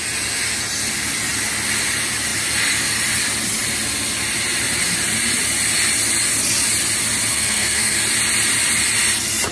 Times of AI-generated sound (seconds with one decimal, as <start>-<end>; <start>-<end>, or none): 7.3-8.0